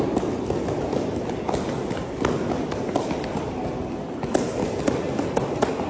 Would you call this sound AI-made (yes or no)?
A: no